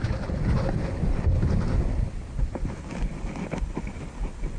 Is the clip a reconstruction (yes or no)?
no